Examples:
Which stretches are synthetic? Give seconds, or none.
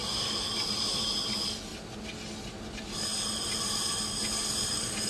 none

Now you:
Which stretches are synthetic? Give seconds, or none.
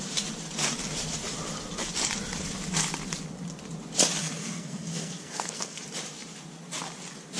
4.2-5.8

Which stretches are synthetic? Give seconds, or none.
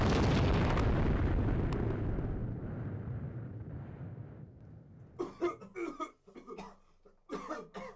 none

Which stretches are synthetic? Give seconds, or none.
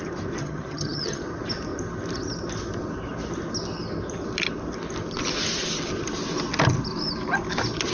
0.4-1.2